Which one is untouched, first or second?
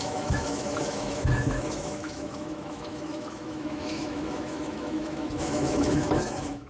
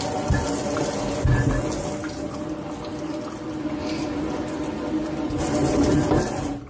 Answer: second